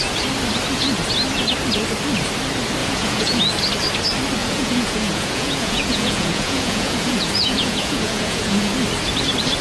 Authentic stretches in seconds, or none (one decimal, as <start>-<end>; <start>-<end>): 0.0-2.8; 3.4-4.4; 8.7-9.6